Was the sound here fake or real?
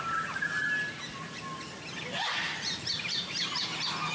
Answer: real